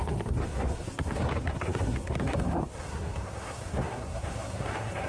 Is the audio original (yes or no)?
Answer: no